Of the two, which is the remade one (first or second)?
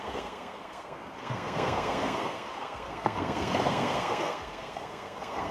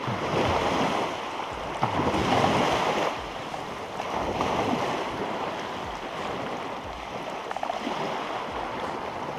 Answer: first